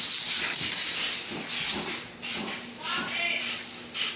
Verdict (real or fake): real